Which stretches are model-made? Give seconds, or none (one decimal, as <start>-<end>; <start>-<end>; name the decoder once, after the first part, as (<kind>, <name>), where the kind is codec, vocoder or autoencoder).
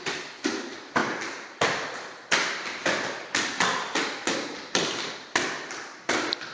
none